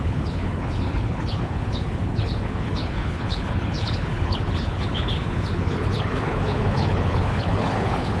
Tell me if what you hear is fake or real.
fake